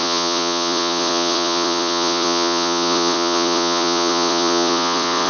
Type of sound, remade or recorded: remade